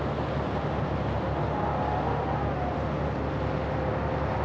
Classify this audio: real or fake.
real